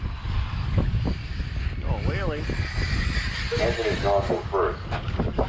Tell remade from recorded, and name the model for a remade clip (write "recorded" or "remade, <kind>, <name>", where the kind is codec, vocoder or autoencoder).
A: recorded